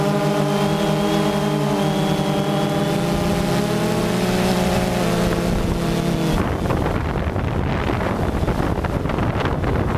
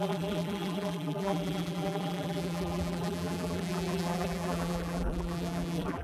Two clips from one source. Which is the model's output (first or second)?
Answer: second